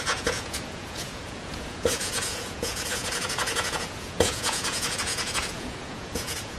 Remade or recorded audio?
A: remade